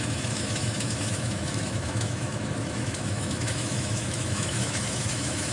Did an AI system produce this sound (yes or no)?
yes